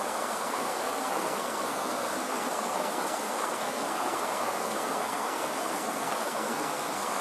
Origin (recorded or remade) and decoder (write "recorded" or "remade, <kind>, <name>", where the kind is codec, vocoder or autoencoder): remade, codec, SNAC